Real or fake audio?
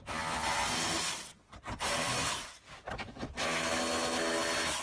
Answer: real